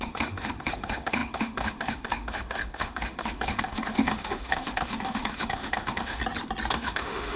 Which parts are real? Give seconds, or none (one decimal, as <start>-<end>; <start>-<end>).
6.2-6.7

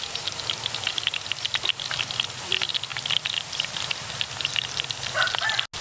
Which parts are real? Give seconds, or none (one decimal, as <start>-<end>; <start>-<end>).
0.0-2.9; 4.1-5.8

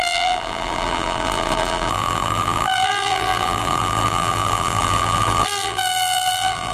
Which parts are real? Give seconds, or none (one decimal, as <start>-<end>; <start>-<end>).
none

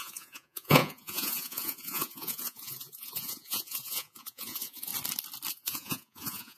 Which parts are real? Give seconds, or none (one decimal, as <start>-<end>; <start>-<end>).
4.9-5.5

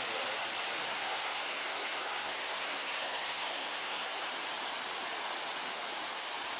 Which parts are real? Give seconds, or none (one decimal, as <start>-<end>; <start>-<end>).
0.0-0.8; 4.3-6.6

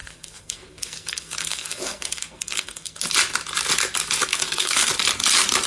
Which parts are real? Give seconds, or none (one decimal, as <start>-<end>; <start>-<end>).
3.0-4.3; 4.9-5.7